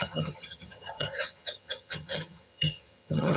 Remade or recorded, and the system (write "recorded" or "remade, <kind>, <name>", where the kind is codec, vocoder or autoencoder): remade, vocoder, HiFi-GAN